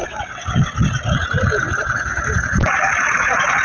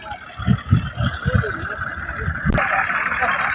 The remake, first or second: first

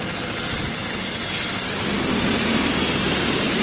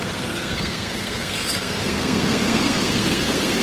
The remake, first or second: second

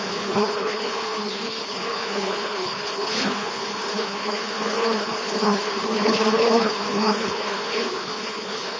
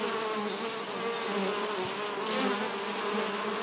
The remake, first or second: first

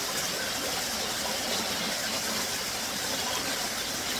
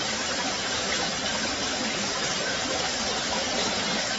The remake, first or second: second